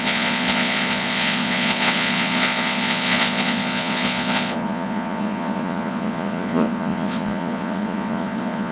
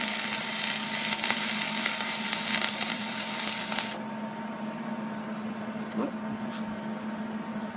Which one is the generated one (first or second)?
first